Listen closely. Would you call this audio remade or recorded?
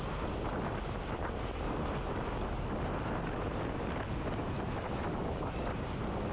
recorded